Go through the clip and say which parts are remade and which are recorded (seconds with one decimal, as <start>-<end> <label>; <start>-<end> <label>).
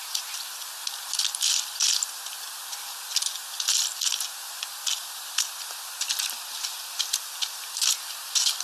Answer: 0.0-6.7 recorded; 6.7-8.0 remade; 8.0-8.6 recorded